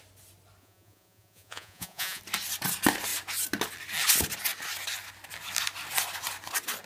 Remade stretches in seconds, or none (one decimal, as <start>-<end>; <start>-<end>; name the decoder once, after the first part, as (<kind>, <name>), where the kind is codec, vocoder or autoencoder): 0.6-2.2 (vocoder, Vocos)